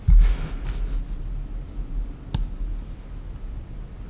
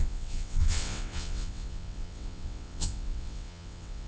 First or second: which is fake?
second